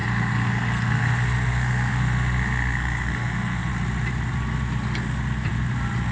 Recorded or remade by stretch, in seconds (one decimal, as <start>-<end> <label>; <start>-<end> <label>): 0.0-3.7 remade; 3.7-6.1 recorded